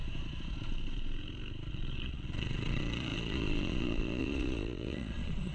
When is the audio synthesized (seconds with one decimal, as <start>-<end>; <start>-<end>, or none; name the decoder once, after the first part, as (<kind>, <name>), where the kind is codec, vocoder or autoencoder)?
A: 1.7-5.5 (vocoder, Vocos)